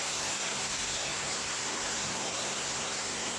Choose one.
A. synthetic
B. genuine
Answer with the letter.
A